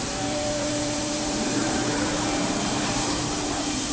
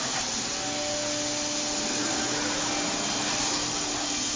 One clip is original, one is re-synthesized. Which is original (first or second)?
second